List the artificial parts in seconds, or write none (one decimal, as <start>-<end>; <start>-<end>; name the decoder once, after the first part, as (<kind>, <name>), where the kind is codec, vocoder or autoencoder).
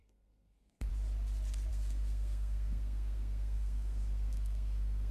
0.0-0.9 (codec, SNAC); 1.7-5.1